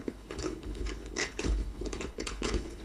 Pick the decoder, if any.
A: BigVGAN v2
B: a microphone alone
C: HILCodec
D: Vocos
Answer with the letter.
C